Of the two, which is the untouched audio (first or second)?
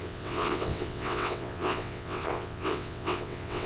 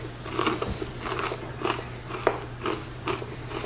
second